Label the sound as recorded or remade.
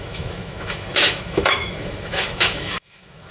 remade